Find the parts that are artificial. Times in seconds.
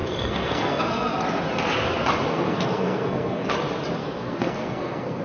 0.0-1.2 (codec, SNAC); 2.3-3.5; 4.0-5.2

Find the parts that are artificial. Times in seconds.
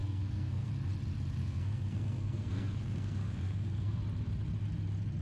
0.0-0.7 (codec, SNAC); 1.4-4.0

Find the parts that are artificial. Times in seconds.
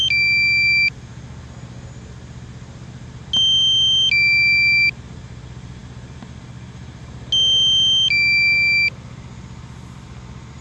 none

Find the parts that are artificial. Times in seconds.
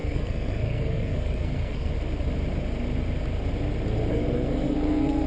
0.0-1.9 (codec, SNAC); 4.1-5.3